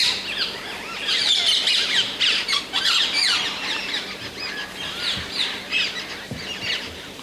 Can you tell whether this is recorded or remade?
recorded